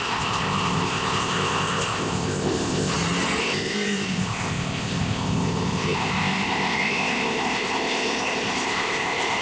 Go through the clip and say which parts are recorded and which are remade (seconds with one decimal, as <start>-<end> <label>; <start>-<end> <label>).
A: 0.0-2.9 remade; 2.9-3.4 recorded; 3.4-9.4 remade